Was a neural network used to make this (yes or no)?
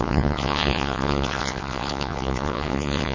yes